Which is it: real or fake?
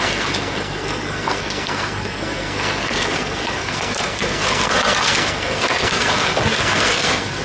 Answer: fake